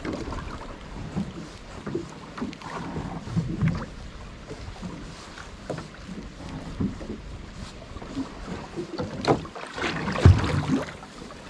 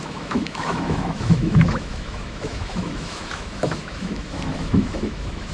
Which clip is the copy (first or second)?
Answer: second